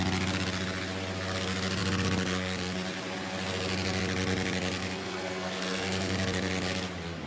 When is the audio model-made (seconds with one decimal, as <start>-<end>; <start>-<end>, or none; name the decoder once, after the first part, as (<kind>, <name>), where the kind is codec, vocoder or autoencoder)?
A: 4.8-6.5 (codec, SNAC)